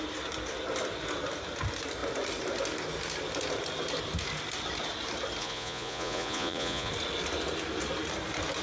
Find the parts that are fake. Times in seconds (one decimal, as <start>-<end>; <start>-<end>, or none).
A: 5.4-6.9